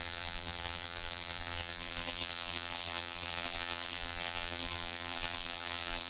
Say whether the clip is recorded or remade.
remade